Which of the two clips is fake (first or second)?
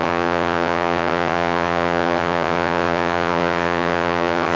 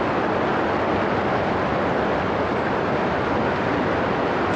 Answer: first